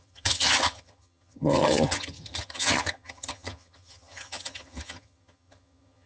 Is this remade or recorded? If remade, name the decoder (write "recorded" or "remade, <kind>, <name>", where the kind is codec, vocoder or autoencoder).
remade, vocoder, HiFi-GAN